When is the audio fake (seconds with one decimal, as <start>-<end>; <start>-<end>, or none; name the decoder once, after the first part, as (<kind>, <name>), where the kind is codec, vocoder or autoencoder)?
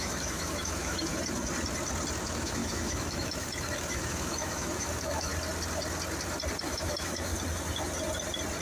0.0-1.1 (autoencoder, DAC-VAE); 2.2-5.3; 6.6-7.3